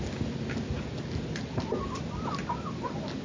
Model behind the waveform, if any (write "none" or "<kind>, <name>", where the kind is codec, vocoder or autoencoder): none